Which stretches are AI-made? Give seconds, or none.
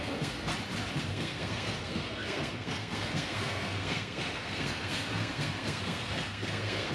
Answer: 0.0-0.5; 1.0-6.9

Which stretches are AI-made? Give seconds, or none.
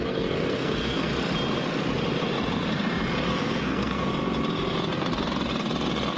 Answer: 0.0-1.1; 3.4-4.1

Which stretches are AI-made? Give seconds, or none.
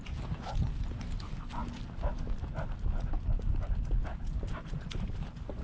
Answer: none